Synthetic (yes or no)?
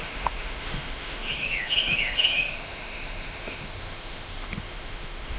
yes